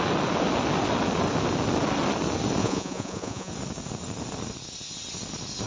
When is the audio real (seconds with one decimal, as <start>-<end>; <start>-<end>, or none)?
0.0-2.6; 3.5-5.7